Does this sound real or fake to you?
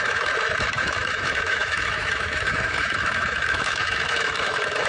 fake